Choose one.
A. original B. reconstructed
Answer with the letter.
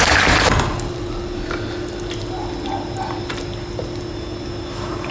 A